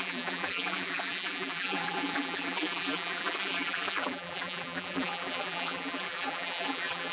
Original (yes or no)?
no